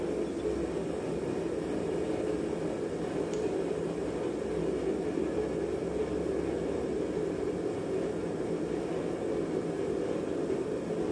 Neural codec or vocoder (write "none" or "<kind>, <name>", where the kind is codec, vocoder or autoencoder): none